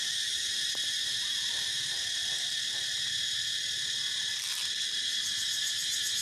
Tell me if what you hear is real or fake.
real